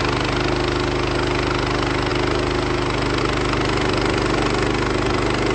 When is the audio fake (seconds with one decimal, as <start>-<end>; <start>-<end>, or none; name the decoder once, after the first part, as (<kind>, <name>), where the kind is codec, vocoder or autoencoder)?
none